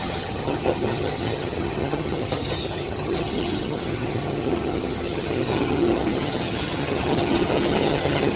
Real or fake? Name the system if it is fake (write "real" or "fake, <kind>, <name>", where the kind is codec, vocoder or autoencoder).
fake, vocoder, HiFi-GAN